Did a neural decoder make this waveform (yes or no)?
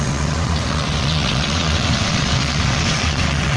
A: yes